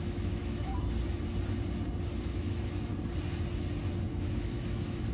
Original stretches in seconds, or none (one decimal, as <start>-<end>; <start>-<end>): 0.7-2.2; 2.9-4.1